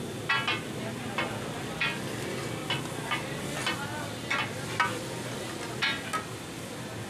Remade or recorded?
recorded